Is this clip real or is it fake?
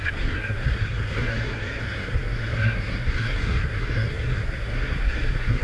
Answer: fake